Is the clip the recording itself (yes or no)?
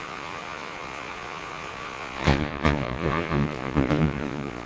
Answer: no